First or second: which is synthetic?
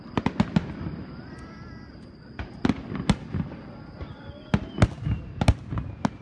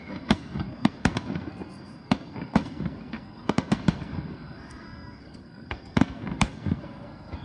second